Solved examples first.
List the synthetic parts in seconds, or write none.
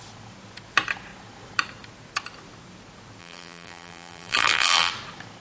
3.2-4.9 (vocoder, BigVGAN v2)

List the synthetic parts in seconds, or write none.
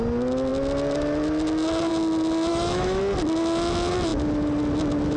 2.5-3.0 (autoencoder, DAC-VAE)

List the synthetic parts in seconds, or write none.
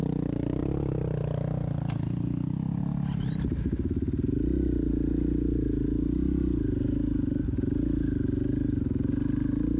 none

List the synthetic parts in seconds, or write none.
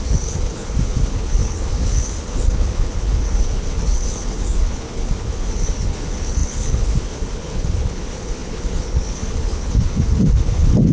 0.0-10.9 (codec, HILCodec)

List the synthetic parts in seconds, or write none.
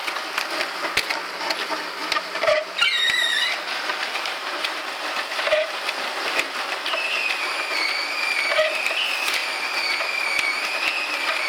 2.0-4.9 (vocoder, BigVGAN v2)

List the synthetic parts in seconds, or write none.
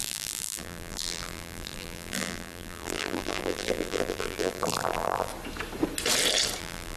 0.0-5.3 (vocoder, BigVGAN v2); 6.6-7.0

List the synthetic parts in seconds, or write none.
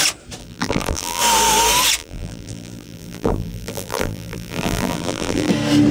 0.4-1.2 (vocoder, BigVGAN v2); 2.0-5.5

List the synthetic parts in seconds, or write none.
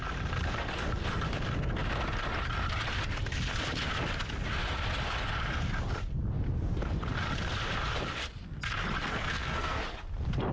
9.1-9.8 (codec, SNAC)